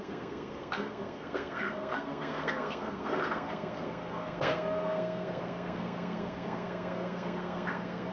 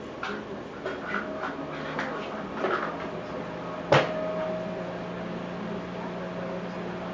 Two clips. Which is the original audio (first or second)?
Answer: second